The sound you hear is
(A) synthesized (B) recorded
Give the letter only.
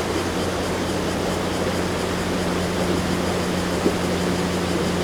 B